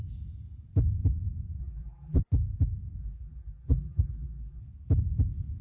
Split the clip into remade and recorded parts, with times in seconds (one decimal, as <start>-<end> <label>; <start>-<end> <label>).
0.0-1.6 recorded; 1.6-2.2 remade; 2.2-3.0 recorded; 3.0-4.6 remade; 4.6-5.6 recorded